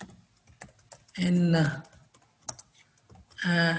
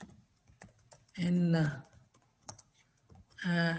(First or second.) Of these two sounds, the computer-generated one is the second